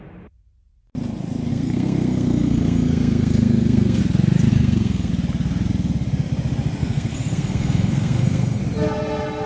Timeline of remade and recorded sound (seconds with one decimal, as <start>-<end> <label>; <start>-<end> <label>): 0.0-1.5 recorded; 1.5-4.0 remade; 4.0-4.5 recorded; 4.5-5.1 remade; 5.1-6.8 recorded; 6.8-8.6 remade; 8.6-9.5 recorded